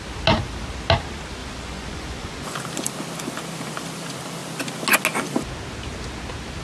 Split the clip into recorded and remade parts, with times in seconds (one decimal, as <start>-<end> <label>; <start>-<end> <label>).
0.0-1.4 recorded; 1.4-2.6 remade; 2.6-6.6 recorded